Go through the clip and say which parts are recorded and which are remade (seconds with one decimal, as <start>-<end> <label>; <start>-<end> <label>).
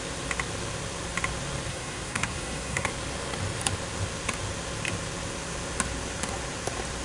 0.0-1.7 recorded; 1.7-2.9 remade; 2.9-7.0 recorded